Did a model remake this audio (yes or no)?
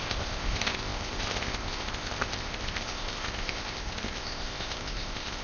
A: yes